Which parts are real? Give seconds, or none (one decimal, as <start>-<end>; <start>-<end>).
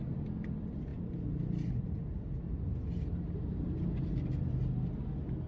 0.0-5.5